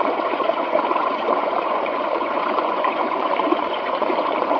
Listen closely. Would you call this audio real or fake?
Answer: fake